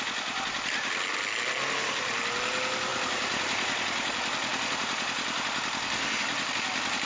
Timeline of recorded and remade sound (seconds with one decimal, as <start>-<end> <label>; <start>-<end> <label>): 0.0-7.1 recorded